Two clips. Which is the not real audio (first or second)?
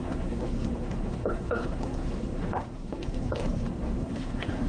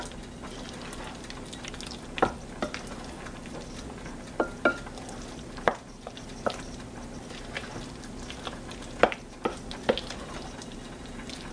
first